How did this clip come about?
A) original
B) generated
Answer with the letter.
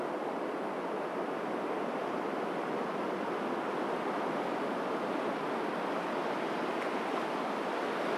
A